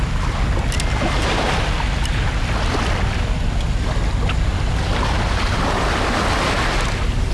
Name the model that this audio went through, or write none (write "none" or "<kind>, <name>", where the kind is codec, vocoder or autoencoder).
none